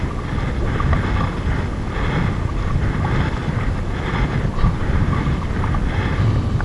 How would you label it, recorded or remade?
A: recorded